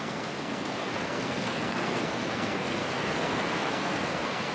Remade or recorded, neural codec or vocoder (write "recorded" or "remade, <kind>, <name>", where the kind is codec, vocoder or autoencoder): remade, codec, SNAC